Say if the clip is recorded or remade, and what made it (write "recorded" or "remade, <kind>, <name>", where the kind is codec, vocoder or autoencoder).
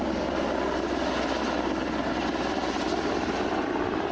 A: recorded